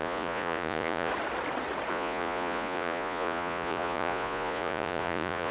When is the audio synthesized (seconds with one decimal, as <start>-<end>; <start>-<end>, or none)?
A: 0.0-1.1; 1.9-5.5

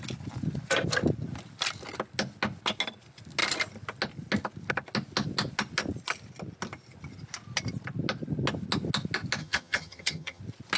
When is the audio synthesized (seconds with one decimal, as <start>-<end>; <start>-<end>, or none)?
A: 9.4-10.4

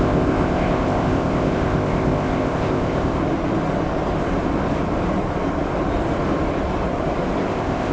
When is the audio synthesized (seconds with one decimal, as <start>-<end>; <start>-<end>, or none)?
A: 0.0-3.2; 7.5-7.9

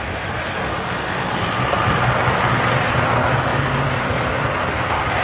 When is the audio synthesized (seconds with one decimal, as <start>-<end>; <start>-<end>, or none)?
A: none